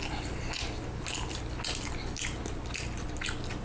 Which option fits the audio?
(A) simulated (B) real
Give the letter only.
B